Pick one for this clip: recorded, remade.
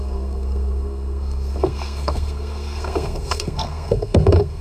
remade